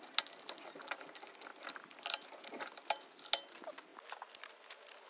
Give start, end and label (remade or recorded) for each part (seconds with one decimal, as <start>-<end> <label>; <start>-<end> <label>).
0.0-1.5 recorded; 1.5-3.2 remade; 3.2-3.9 recorded; 3.9-4.5 remade; 4.5-5.1 recorded